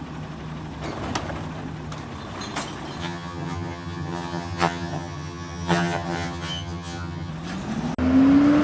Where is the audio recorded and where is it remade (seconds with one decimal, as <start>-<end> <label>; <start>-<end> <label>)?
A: 0.0-3.0 recorded; 3.0-7.3 remade; 7.3-8.6 recorded